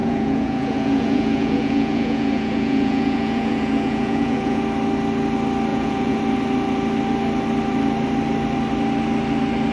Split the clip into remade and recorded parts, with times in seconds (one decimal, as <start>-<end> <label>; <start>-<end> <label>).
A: 0.0-4.6 remade; 4.6-5.7 recorded; 5.7-6.2 remade; 6.2-9.7 recorded